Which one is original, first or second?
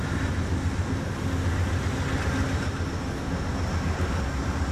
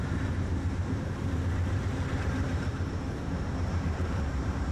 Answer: first